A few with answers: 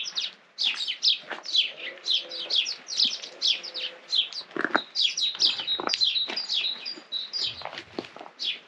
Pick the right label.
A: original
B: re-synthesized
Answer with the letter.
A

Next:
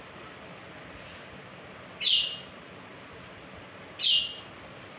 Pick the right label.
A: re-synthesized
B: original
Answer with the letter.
B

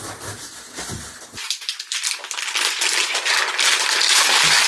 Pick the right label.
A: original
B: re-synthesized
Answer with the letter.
A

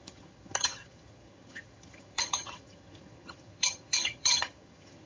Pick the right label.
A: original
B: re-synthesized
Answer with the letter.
B